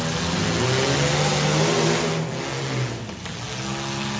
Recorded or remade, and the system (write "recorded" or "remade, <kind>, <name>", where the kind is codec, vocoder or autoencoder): recorded